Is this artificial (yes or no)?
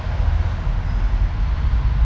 no